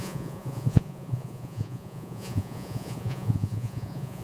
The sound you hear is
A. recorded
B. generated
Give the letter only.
B